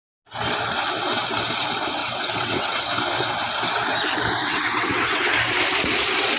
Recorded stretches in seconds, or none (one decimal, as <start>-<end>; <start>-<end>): 0.0-2.0; 2.9-4.4; 5.2-6.4